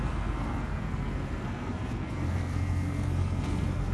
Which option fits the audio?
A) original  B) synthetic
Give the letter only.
B